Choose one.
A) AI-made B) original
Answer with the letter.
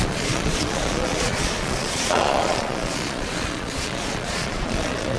A